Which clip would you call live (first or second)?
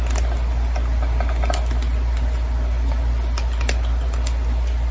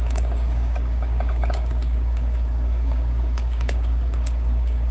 first